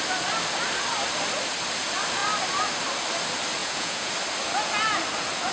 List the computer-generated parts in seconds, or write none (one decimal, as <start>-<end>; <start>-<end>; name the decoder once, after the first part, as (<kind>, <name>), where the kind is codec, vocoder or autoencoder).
3.6-4.1 (vocoder, Vocos)